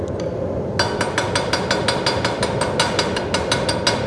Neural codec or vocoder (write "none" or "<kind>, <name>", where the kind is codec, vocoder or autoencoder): none